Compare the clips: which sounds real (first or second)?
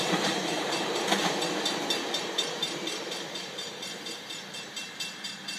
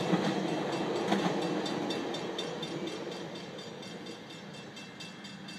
second